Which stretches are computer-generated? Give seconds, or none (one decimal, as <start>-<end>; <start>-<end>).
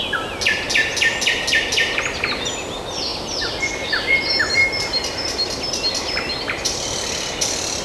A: none